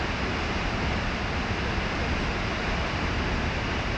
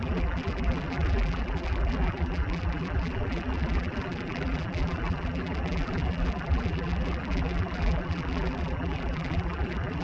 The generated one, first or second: second